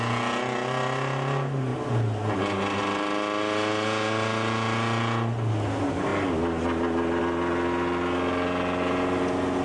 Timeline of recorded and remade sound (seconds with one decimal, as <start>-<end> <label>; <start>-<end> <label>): 0.0-9.6 recorded